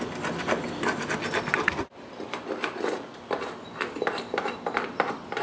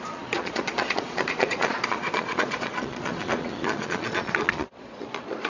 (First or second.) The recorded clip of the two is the first